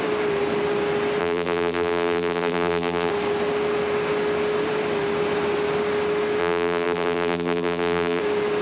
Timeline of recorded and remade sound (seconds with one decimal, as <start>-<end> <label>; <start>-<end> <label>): 0.0-1.2 recorded; 1.2-3.1 remade; 3.1-6.4 recorded; 6.4-8.2 remade; 8.2-8.6 recorded